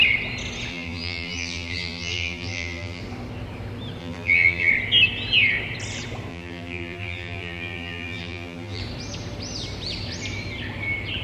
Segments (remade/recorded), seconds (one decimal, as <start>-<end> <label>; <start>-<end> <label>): 0.0-0.7 recorded; 0.7-3.0 remade; 3.0-4.0 recorded; 4.0-4.7 remade; 4.7-6.3 recorded; 6.3-8.8 remade; 8.8-11.2 recorded